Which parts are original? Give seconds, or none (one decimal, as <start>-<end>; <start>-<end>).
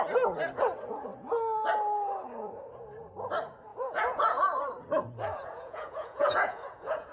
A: 0.0-3.7; 4.6-5.3